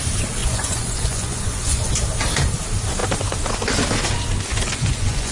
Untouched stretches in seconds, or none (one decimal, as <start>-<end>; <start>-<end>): 0.0-0.4; 1.9-4.5